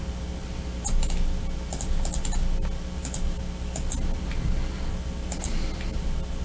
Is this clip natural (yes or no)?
yes